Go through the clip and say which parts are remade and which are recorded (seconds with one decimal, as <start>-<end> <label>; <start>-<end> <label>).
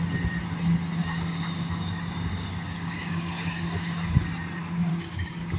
0.0-1.0 recorded; 1.0-4.4 remade; 4.4-4.9 recorded; 4.9-5.6 remade